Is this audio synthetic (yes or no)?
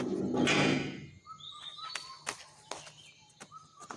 no